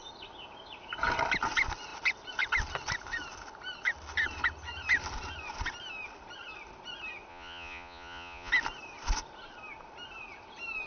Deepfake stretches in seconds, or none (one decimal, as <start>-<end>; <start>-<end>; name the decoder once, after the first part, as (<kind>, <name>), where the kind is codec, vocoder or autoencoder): 7.3-8.5 (vocoder, Vocos)